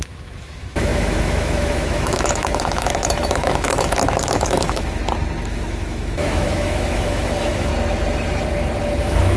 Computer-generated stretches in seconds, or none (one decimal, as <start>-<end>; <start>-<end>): 0.0-5.0; 5.5-7.7; 9.0-9.4